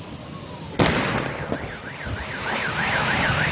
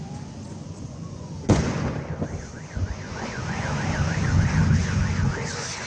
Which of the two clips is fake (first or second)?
second